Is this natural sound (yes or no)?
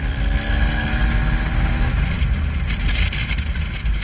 yes